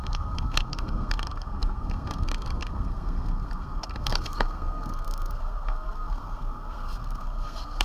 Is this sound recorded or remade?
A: remade